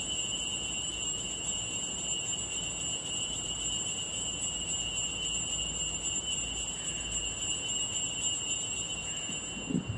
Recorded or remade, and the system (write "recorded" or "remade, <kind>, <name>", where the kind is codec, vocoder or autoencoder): recorded